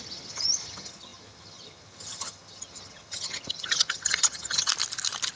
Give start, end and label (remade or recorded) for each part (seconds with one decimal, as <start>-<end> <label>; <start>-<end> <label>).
0.0-4.7 remade; 4.7-5.4 recorded